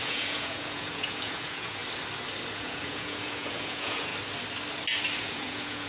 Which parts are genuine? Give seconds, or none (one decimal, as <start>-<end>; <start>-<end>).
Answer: 1.8-2.5; 4.1-5.2